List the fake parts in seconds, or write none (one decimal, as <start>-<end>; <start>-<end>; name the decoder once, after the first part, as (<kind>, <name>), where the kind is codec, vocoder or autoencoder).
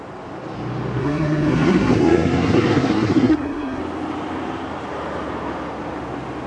1.0-3.8 (codec, SNAC)